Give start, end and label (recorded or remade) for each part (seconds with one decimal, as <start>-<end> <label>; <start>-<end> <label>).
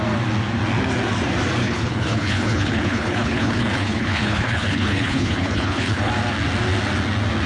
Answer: 0.0-1.6 recorded; 1.6-6.1 remade; 6.1-7.5 recorded